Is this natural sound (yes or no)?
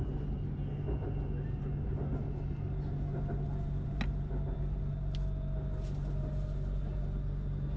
yes